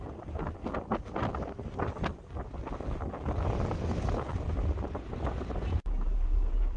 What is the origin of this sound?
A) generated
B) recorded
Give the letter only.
B